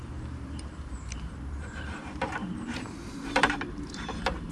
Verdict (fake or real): fake